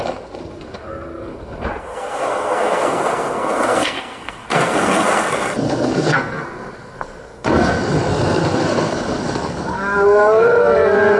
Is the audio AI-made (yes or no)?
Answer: yes